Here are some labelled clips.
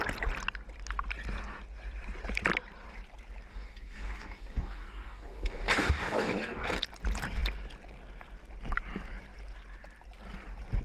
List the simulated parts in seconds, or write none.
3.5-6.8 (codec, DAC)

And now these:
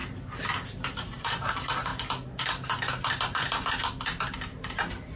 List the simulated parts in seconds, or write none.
0.6-1.9 (vocoder, BigVGAN v2); 4.7-5.2

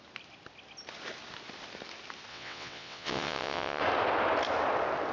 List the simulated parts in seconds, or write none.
2.3-3.8 (vocoder, WaveNeXt)

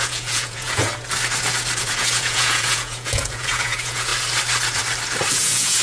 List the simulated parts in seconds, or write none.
0.0-0.9 (vocoder, Vocos); 1.8-4.1; 5.3-5.8

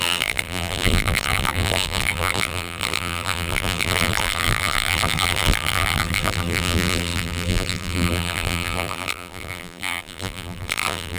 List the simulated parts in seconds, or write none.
0.0-11.2 (vocoder, BigVGAN v2)

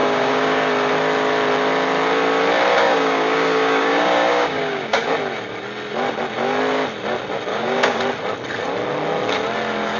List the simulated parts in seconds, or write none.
0.0-0.7 (codec, DAC); 2.7-5.1; 7.5-8.0

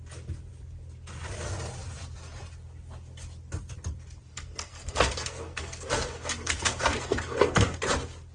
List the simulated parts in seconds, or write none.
4.3-7.8 (codec, SNAC)

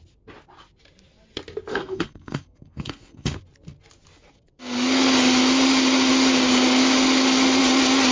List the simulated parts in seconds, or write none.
1.7-3.4 (codec, SNAC)